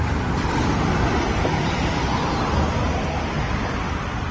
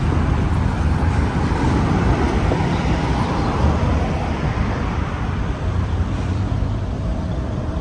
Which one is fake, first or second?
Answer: second